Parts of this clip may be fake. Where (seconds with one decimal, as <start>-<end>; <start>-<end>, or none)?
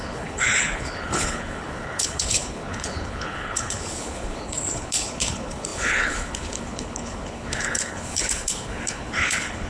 0.0-9.7